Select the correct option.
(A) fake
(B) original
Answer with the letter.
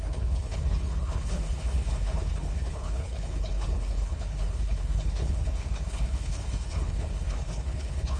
A